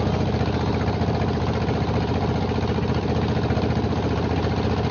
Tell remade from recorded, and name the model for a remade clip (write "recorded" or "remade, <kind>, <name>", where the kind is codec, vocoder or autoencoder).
recorded